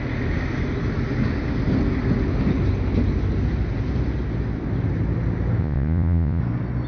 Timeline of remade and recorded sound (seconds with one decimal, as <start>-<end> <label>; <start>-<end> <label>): 0.0-5.6 recorded; 5.6-6.4 remade; 6.4-6.9 recorded